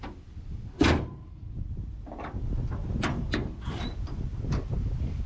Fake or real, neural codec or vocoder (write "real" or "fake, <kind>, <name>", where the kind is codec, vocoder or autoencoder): real